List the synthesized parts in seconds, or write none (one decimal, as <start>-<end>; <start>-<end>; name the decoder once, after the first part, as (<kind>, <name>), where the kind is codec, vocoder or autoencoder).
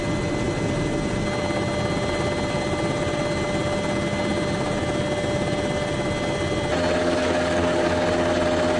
7.0-8.0 (codec, DAC)